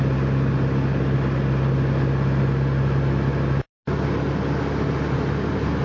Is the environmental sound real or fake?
real